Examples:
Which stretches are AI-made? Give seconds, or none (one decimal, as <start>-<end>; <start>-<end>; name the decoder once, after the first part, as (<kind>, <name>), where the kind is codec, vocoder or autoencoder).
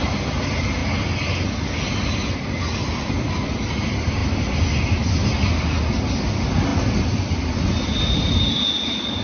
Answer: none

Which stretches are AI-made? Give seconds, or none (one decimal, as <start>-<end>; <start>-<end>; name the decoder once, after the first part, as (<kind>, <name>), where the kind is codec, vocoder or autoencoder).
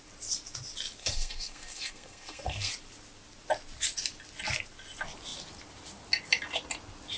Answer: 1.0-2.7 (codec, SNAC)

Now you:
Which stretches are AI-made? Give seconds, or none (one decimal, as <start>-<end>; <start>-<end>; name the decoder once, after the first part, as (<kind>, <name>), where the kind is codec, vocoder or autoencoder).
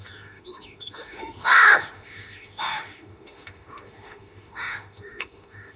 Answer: 0.0-5.8 (autoencoder, DAC-VAE)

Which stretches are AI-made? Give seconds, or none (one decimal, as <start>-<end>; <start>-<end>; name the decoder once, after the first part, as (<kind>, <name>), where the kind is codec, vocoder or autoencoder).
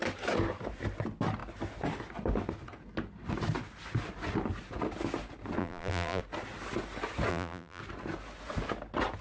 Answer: 5.6-6.2 (vocoder, BigVGAN v2); 7.3-7.8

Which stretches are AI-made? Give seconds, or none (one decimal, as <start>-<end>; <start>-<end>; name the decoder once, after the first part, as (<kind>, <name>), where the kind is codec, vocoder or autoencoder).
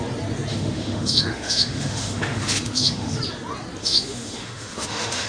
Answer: 0.5-3.2 (autoencoder, DAC-VAE); 3.8-5.3